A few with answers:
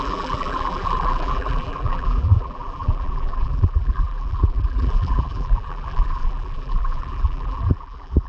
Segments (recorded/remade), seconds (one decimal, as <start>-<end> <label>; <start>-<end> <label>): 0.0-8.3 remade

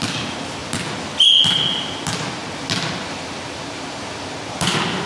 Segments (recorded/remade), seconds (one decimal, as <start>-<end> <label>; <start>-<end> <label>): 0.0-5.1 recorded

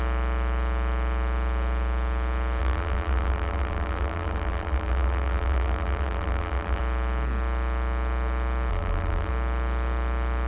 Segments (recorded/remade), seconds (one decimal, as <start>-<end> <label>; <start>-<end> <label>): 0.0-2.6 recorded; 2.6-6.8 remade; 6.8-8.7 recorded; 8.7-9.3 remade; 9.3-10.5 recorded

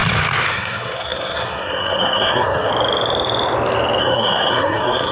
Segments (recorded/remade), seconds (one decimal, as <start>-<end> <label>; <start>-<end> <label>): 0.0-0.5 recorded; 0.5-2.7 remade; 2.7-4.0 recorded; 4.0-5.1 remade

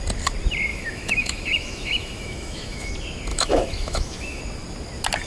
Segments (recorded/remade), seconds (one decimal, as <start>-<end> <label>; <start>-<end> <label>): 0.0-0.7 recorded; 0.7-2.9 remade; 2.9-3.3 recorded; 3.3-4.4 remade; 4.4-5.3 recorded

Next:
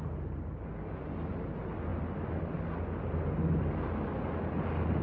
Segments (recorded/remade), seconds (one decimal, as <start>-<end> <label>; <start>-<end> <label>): 0.0-5.0 recorded